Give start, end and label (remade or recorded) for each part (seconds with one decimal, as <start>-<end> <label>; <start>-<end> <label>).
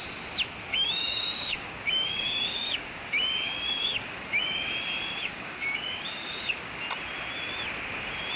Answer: 0.0-0.7 recorded; 0.7-4.7 remade; 4.7-5.3 recorded; 5.3-6.8 remade; 6.8-8.4 recorded